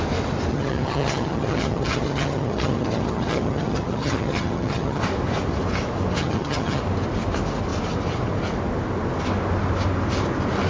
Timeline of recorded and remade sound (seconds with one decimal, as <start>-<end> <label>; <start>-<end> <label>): 0.0-0.5 recorded; 0.5-5.0 remade; 5.0-6.2 recorded; 6.2-6.8 remade; 6.8-10.7 recorded